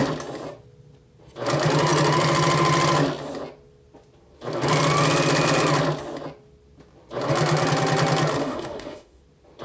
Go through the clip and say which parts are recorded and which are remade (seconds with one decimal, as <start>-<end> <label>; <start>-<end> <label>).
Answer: 0.0-8.4 recorded; 8.4-9.2 remade; 9.2-9.6 recorded